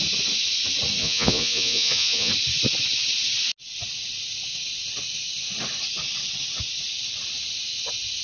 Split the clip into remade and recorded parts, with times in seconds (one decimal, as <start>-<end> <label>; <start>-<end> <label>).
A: 0.0-1.0 recorded; 1.0-2.3 remade; 2.3-8.2 recorded